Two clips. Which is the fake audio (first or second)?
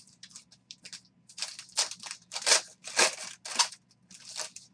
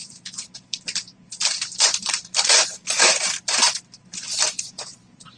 second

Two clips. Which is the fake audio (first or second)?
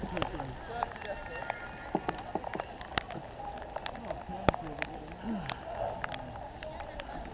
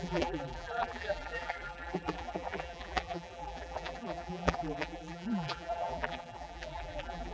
second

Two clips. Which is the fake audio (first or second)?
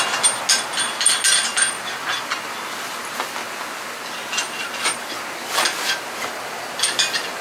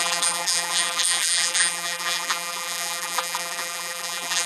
second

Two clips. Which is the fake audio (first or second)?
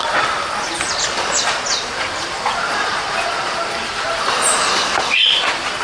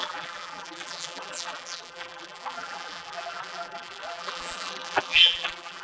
second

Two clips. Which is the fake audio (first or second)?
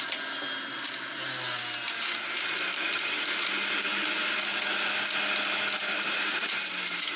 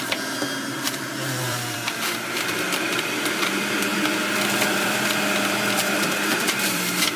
second